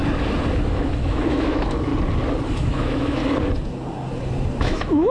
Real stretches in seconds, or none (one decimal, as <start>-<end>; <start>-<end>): 0.0-0.7; 1.9-2.5; 3.2-4.6